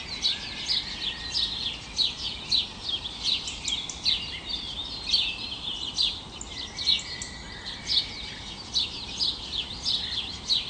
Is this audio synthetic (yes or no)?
no